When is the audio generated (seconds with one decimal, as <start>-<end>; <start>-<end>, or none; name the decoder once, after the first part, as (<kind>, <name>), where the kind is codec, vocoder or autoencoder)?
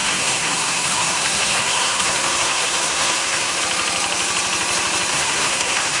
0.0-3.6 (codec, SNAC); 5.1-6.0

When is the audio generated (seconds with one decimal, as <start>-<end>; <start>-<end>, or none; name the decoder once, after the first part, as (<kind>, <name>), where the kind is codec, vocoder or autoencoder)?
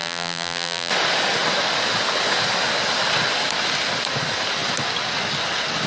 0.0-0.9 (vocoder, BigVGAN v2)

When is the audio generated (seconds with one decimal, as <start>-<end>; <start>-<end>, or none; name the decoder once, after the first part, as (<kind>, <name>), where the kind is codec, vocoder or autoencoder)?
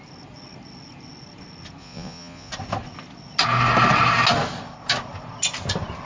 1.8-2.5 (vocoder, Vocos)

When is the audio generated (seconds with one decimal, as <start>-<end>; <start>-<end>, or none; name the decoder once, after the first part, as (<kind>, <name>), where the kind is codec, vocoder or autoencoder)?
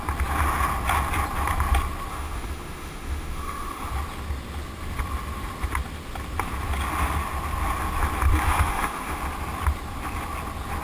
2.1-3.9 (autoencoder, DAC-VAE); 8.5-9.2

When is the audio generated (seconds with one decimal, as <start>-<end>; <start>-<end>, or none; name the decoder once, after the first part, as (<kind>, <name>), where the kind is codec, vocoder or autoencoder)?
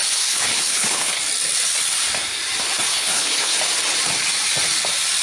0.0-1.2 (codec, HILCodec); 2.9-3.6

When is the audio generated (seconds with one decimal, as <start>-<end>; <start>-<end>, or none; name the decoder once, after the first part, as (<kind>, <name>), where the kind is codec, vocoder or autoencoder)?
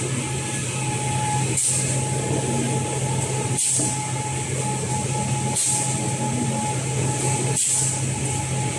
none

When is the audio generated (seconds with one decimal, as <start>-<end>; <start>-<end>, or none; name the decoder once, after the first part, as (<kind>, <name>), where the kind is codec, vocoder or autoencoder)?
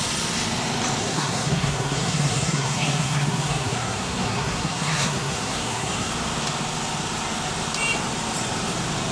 1.0-6.1 (codec, SNAC)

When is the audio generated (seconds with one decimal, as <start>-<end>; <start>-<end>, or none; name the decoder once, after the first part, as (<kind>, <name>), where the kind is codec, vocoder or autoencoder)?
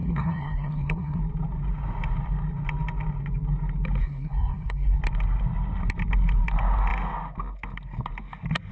0.0-1.2 (codec, SNAC); 4.0-5.0